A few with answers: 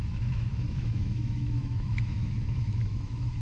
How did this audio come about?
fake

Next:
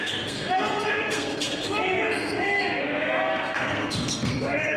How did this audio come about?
fake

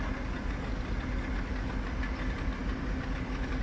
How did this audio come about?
real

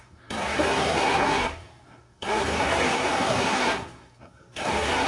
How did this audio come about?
fake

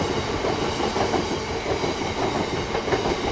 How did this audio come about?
real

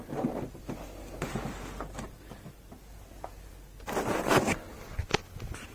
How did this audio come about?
real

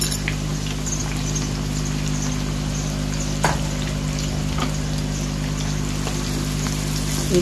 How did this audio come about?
real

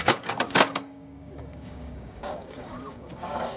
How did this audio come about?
fake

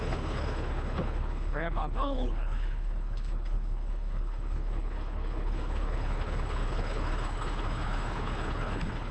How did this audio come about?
fake